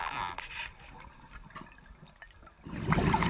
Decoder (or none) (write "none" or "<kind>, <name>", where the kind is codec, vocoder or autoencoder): none